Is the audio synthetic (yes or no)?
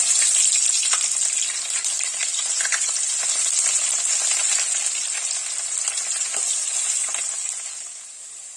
no